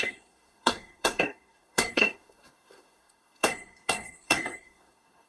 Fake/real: fake